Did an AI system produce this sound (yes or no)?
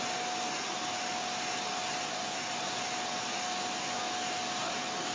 no